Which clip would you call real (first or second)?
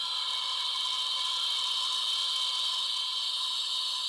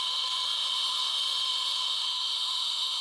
first